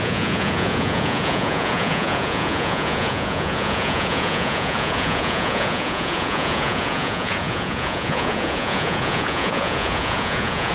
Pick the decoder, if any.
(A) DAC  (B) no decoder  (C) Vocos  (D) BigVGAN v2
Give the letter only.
C